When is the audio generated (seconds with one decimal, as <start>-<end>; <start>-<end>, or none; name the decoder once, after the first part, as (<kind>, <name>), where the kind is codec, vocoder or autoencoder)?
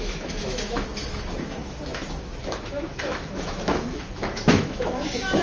0.0-5.4 (autoencoder, DAC-VAE)